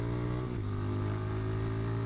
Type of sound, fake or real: real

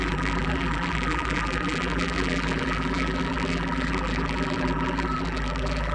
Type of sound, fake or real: fake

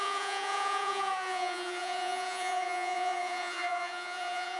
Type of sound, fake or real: fake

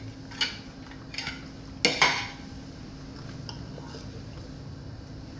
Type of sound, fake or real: real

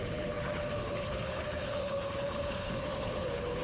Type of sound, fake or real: fake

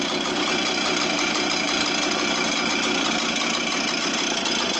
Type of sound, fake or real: real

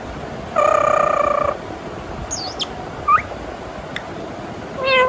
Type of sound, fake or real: real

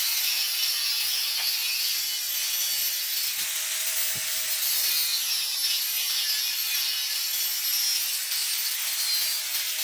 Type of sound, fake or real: real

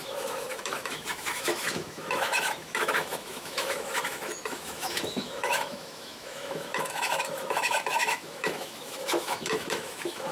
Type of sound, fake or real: fake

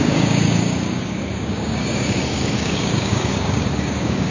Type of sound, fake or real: fake